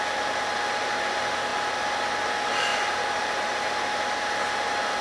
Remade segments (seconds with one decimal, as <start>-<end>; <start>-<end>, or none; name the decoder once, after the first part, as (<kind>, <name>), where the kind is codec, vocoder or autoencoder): 2.7-4.0 (vocoder, BigVGAN v2)